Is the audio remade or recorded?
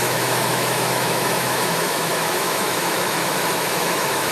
remade